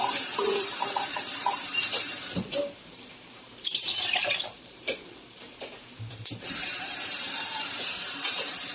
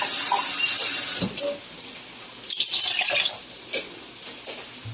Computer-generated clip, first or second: first